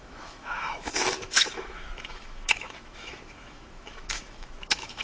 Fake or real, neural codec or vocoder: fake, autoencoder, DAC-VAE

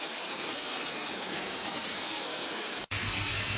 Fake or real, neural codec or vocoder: fake, codec, SNAC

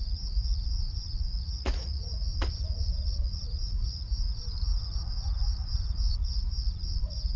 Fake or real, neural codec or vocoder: fake, vocoder, Vocos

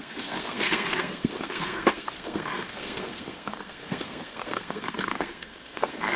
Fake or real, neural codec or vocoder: fake, codec, SNAC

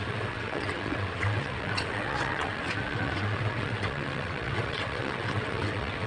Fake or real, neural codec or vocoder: fake, vocoder, WaveNeXt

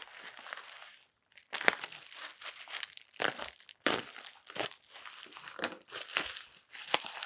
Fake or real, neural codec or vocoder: fake, vocoder, BigVGAN v2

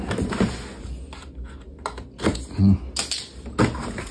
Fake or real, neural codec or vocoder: real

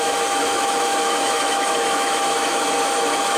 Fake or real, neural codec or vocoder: fake, autoencoder, DAC-VAE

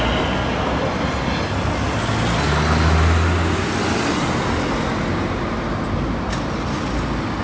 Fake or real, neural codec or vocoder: real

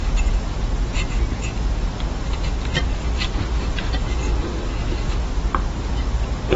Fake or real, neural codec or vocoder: real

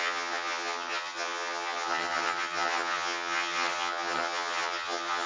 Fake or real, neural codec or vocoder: fake, vocoder, HiFi-GAN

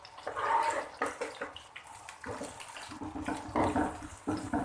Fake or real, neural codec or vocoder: real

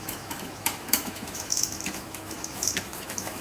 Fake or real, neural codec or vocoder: fake, autoencoder, DAC-VAE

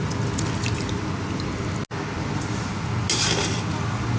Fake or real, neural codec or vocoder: real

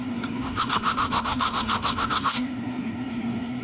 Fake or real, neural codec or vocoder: fake, codec, SNAC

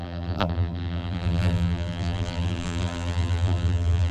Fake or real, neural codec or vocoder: fake, vocoder, BigVGAN v2